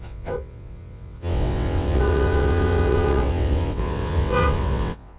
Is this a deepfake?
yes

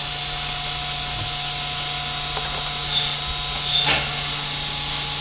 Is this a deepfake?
no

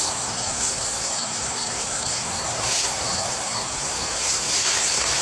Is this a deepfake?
yes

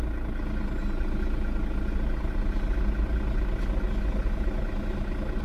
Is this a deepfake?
no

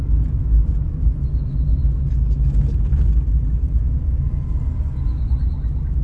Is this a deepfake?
no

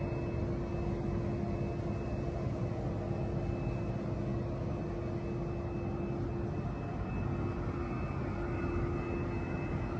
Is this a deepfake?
no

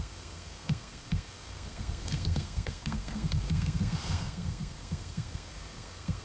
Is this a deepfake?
yes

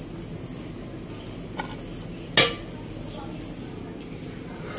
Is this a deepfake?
no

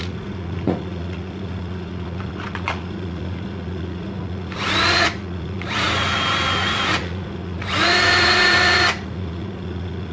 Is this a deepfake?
yes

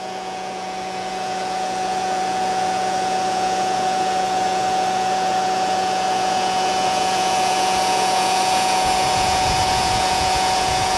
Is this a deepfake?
yes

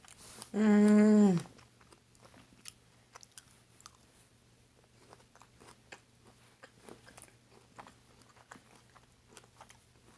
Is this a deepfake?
no